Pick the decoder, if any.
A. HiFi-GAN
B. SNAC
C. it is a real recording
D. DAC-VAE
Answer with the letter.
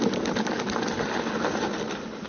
C